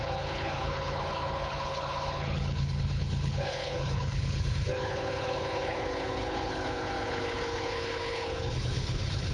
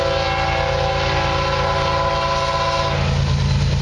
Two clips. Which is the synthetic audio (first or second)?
first